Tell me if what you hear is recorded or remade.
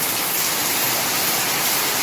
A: recorded